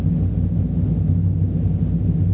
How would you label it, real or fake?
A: real